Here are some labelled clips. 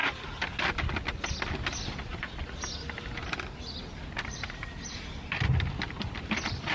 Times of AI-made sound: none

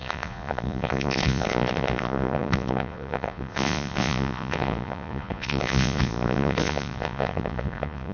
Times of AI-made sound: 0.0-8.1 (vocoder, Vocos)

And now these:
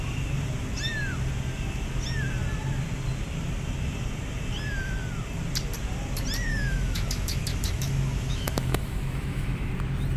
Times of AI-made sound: 6.5-9.7 (autoencoder, DAC-VAE)

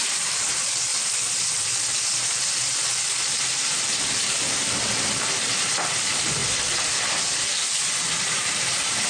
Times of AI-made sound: 0.0-0.9 (vocoder, BigVGAN v2); 3.3-6.4; 8.3-9.1